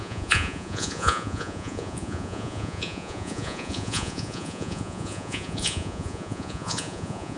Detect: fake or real fake